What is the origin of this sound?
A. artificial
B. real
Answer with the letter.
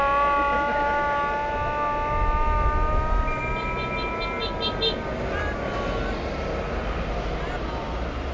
B